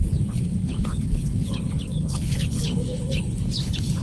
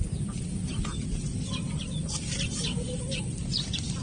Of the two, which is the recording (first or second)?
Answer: second